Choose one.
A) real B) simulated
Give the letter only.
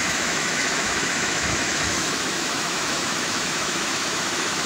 B